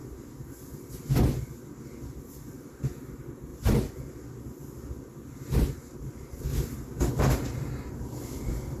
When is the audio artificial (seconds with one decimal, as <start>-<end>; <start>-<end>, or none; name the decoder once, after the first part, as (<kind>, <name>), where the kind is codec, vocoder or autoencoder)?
2.5-3.5 (vocoder, BigVGAN v2); 5.6-6.5; 7.2-8.8